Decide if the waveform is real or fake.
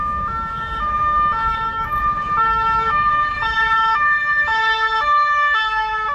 fake